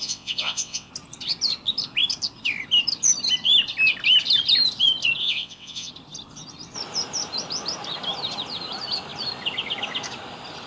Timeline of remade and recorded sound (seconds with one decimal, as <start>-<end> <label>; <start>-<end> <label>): 0.0-0.9 remade; 0.9-5.2 recorded; 5.2-5.9 remade; 5.9-10.7 recorded